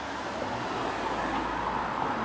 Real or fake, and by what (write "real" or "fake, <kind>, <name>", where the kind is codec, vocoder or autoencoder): real